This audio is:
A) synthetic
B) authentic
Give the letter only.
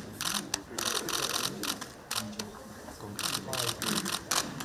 B